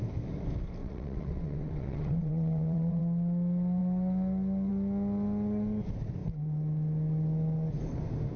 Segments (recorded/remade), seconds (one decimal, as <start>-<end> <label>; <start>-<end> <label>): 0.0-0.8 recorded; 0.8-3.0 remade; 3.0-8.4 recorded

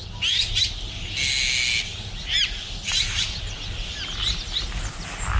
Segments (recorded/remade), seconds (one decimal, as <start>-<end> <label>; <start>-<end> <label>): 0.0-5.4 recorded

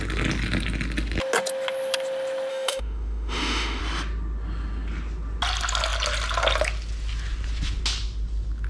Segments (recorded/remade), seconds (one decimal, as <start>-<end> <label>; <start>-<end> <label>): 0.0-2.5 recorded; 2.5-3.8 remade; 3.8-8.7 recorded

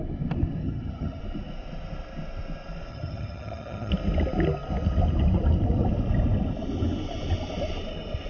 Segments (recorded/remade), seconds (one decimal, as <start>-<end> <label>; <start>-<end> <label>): 0.0-0.6 recorded; 0.6-1.2 remade; 1.2-2.9 recorded; 2.9-3.9 remade; 3.9-8.3 recorded

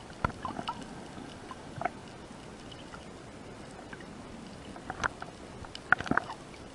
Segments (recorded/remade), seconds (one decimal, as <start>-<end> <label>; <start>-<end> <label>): 0.0-2.0 remade; 2.0-6.0 recorded; 6.0-6.7 remade

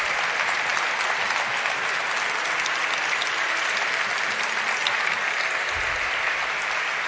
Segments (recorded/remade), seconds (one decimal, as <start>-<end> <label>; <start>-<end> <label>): 0.0-7.1 recorded

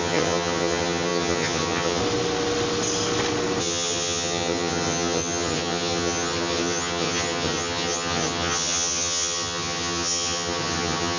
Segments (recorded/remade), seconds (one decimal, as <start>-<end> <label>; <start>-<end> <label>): 0.0-2.0 remade; 2.0-3.6 recorded; 3.6-11.2 remade

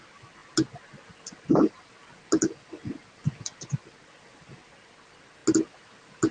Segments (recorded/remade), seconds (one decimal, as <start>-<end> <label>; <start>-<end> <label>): 0.0-6.3 recorded